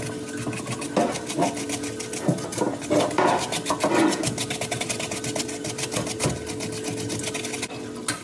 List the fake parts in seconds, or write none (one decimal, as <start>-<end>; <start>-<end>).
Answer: none